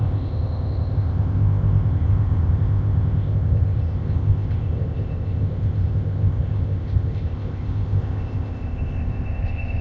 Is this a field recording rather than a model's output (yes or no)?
no